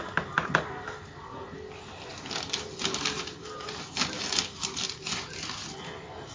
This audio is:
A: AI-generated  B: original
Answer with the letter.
B